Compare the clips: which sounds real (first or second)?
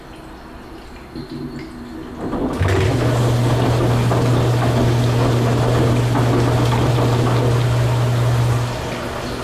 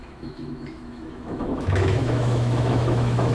first